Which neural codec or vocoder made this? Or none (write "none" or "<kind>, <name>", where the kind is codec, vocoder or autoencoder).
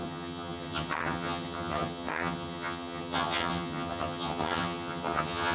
vocoder, HiFi-GAN